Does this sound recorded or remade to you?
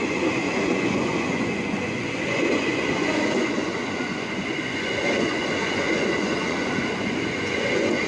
remade